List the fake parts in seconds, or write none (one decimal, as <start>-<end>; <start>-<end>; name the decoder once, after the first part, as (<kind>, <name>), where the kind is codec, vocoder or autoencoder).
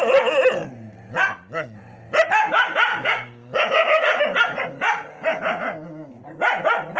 2.9-4.2 (codec, DAC); 5.3-6.1